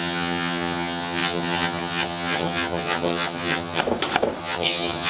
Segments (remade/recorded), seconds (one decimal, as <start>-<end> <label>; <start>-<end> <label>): 0.0-3.8 remade; 3.8-4.4 recorded; 4.4-5.1 remade